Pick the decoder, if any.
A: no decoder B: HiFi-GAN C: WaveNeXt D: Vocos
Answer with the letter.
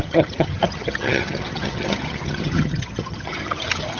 B